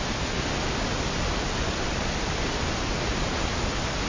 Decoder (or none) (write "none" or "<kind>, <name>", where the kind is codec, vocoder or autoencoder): none